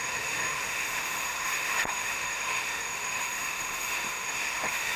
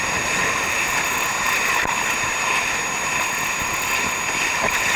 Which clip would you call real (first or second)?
second